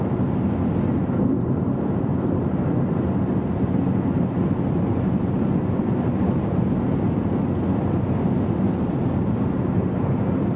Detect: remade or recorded recorded